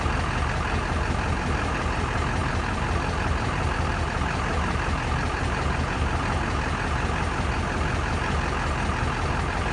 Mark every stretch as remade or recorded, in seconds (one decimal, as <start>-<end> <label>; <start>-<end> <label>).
0.0-2.4 recorded; 2.4-6.2 remade; 6.2-9.7 recorded